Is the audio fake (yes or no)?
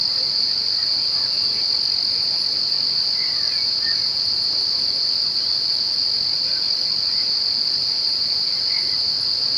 no